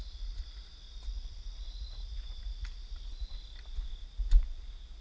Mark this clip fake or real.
real